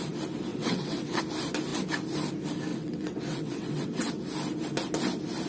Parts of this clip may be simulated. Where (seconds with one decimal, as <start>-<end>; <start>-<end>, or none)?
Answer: 0.5-1.2; 2.7-4.1